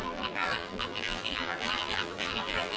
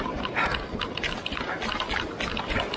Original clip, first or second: second